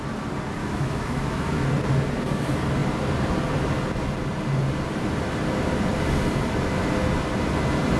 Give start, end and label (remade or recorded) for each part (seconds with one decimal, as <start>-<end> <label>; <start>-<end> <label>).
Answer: 0.0-0.6 recorded; 0.6-1.6 remade; 1.6-8.0 recorded